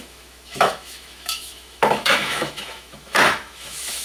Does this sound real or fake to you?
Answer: fake